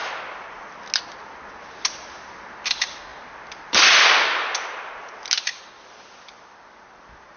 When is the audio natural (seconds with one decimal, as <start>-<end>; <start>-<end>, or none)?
0.0-7.4